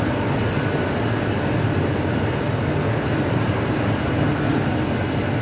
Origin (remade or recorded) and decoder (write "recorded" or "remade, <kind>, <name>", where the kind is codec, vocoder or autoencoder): recorded